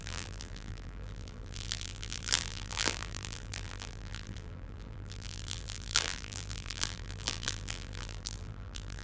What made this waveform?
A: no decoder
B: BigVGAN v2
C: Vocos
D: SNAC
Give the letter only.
B